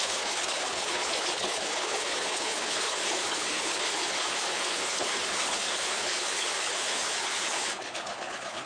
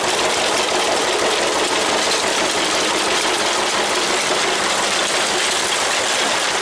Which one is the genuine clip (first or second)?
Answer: second